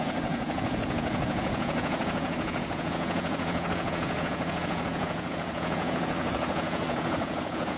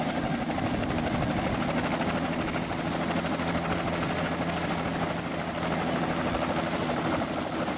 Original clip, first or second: second